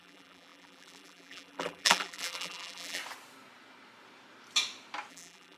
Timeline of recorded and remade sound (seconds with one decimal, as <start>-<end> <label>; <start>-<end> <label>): 0.0-3.0 remade; 3.0-5.1 recorded; 5.1-5.6 remade